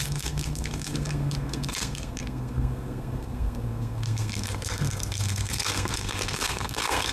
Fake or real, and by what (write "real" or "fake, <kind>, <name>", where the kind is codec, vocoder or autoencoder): fake, codec, SNAC